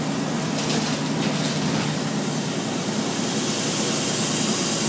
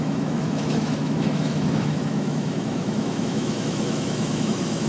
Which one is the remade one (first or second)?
second